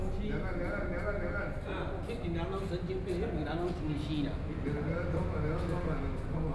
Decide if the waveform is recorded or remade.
recorded